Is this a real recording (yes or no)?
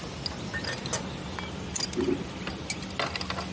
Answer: yes